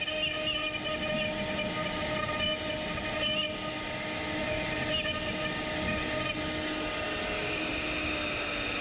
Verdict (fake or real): real